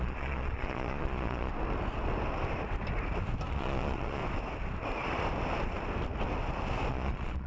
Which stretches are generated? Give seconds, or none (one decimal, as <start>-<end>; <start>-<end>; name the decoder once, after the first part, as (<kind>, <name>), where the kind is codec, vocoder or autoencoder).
0.0-1.5 (vocoder, Vocos); 3.5-4.2; 6.9-7.5

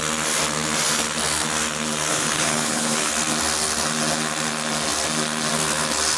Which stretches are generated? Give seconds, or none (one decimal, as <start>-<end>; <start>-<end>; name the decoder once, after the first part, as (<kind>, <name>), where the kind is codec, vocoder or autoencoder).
2.1-3.1 (codec, HILCodec)

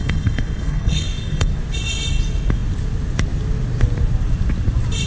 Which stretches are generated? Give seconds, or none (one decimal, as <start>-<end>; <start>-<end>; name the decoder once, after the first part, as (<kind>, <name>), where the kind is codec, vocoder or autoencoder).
0.0-1.5 (codec, SNAC)

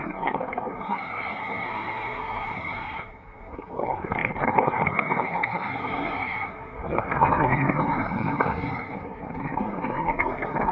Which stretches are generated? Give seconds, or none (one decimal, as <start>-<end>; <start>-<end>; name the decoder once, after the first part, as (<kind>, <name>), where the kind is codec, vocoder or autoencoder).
0.0-10.7 (codec, SNAC)